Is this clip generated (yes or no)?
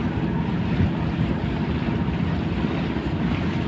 no